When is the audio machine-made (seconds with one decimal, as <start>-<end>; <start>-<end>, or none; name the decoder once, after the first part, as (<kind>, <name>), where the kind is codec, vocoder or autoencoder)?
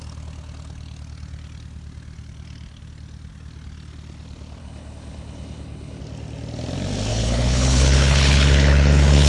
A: 4.6-6.0 (codec, HILCodec); 7.1-9.3